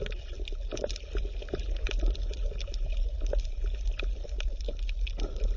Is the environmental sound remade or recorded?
recorded